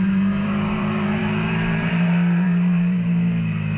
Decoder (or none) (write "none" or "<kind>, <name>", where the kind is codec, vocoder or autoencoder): vocoder, BigVGAN v2